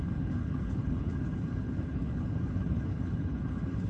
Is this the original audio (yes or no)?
no